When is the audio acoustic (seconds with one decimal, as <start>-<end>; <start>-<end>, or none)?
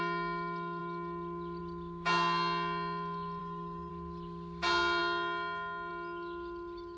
0.0-3.4; 3.9-7.0